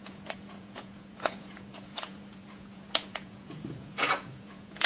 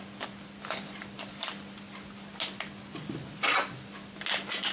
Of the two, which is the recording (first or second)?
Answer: second